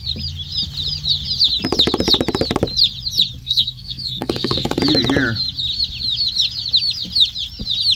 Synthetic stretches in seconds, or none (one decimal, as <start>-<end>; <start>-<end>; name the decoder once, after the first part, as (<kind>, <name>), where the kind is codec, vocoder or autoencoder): 3.4-4.8 (codec, SNAC)